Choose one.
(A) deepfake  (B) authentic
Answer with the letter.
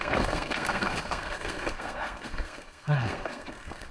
A